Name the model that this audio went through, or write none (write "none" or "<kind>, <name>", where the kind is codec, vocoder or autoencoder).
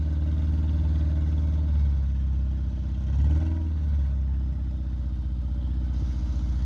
none